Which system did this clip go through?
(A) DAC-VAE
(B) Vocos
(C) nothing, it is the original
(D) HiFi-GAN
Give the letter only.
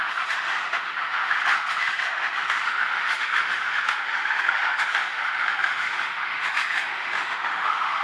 A